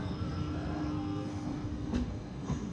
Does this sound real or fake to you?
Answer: fake